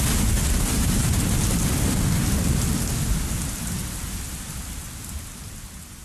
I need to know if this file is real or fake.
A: real